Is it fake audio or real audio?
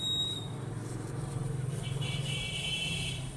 fake